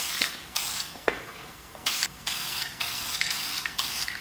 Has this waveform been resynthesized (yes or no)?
yes